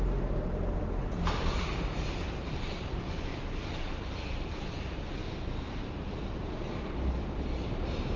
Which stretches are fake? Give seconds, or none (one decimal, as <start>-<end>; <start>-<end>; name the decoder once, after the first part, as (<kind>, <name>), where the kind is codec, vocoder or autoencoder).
0.0-1.7 (vocoder, BigVGAN v2); 2.5-5.2; 5.8-8.2